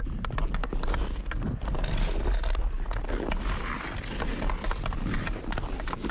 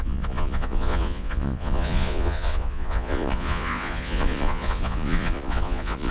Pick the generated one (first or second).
second